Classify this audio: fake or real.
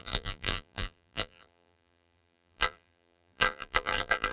fake